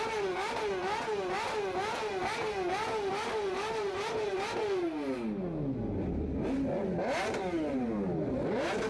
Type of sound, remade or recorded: recorded